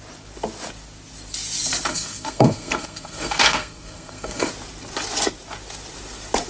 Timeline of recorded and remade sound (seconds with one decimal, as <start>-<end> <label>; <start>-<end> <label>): 0.0-1.9 recorded; 1.9-4.5 remade; 4.5-6.5 recorded